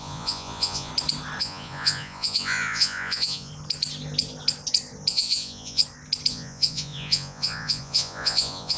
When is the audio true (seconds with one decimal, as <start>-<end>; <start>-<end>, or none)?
0.9-1.4; 3.5-5.1; 5.8-6.3